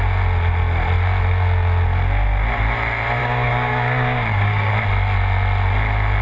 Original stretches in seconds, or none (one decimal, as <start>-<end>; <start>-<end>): 0.0-3.2; 4.7-6.2